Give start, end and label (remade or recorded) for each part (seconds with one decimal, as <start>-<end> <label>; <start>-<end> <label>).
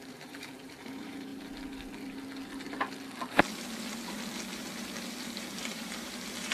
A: 0.0-1.3 remade; 1.3-5.2 recorded; 5.2-6.5 remade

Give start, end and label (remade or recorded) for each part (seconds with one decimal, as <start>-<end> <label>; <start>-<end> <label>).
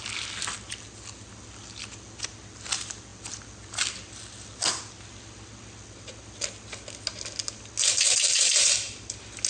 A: 0.0-9.5 recorded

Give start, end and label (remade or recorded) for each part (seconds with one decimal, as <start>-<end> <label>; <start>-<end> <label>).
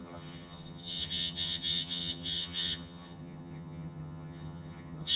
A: 0.0-5.2 remade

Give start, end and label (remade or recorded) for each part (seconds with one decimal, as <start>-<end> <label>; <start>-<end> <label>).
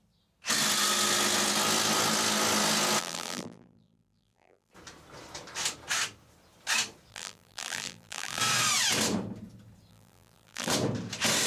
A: 0.0-3.0 recorded; 3.0-4.7 remade; 4.7-7.1 recorded; 7.1-8.4 remade; 8.4-9.9 recorded; 9.9-10.7 remade; 10.7-11.5 recorded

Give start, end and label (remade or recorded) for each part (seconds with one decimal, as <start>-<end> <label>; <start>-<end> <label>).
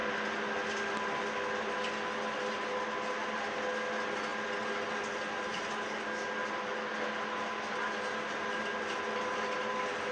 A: 0.0-10.1 recorded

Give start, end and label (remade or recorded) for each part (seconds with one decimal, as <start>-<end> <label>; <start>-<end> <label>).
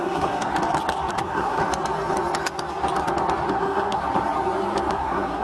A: 0.0-0.5 remade; 0.5-1.1 recorded; 1.1-1.6 remade; 1.6-3.5 recorded; 3.5-4.0 remade; 4.0-4.9 recorded; 4.9-5.4 remade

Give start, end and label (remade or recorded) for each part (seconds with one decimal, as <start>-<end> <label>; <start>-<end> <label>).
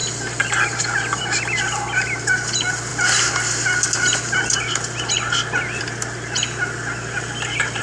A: 0.0-7.8 recorded